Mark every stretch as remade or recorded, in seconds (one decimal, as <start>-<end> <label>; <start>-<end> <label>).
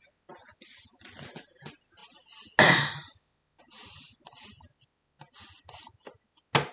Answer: 0.0-6.7 recorded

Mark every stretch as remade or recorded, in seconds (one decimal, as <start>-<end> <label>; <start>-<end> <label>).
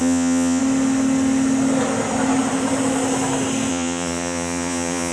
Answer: 0.0-0.6 remade; 0.6-3.7 recorded; 3.7-5.1 remade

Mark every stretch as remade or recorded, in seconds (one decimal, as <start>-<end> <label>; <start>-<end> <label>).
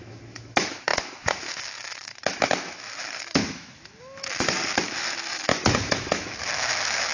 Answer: 0.0-4.6 remade; 4.6-5.4 recorded; 5.4-7.1 remade